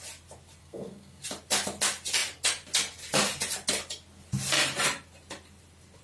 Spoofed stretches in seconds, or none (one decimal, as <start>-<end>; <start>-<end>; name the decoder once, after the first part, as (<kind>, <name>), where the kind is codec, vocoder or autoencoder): 0.6-1.2 (codec, SNAC)